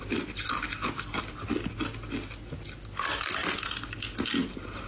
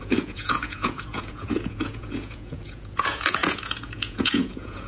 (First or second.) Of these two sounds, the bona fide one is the first